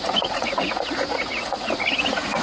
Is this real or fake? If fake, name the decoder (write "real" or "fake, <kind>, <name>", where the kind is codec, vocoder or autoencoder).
fake, vocoder, Vocos